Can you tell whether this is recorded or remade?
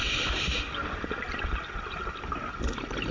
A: recorded